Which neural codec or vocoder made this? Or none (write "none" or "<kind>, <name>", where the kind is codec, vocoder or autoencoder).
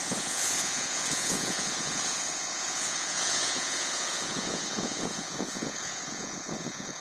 vocoder, Vocos